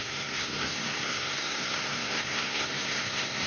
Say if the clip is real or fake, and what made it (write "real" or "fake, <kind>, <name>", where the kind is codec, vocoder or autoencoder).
fake, codec, SNAC